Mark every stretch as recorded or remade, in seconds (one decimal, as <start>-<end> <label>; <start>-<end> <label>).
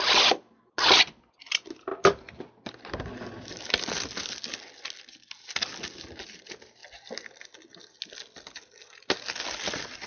0.0-10.1 recorded